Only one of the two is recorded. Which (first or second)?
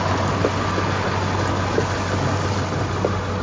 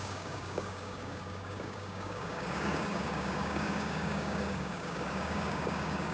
first